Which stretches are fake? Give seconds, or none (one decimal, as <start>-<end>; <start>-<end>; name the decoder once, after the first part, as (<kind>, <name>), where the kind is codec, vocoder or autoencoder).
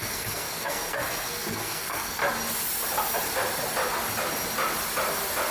0.0-2.2 (codec, SNAC)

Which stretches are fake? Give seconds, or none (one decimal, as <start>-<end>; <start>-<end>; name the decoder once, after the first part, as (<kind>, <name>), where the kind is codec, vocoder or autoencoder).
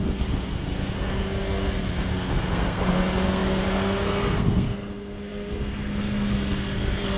0.0-7.2 (codec, SNAC)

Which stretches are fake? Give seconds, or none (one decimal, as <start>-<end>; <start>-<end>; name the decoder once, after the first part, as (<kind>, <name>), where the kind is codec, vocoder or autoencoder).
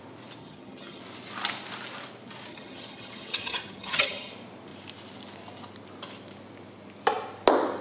0.4-1.0 (vocoder, HiFi-GAN); 2.5-4.3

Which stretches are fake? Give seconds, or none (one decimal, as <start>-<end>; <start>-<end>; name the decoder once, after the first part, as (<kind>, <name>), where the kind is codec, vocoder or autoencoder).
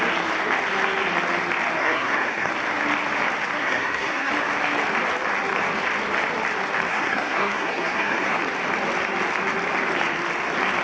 1.8-2.5 (codec, SNAC); 3.6-4.3; 6.9-8.4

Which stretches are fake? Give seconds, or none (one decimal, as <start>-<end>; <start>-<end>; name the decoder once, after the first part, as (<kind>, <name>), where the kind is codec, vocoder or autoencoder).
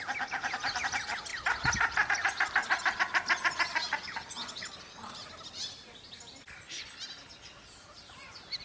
none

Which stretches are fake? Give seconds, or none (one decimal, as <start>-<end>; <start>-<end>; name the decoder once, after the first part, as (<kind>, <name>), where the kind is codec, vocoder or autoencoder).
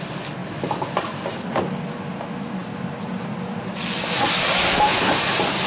none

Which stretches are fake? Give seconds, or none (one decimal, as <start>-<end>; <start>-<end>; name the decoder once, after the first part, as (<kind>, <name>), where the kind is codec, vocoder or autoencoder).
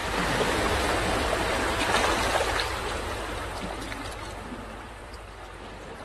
0.0-3.6 (vocoder, BigVGAN v2); 5.0-6.0